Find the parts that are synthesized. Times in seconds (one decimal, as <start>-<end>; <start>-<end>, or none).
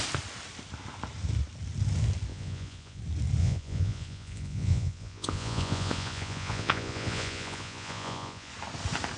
2.3-3.0; 3.4-8.5